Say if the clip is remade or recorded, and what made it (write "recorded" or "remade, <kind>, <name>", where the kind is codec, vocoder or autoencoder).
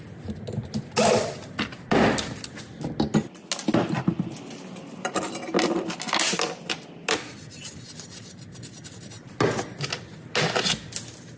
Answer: recorded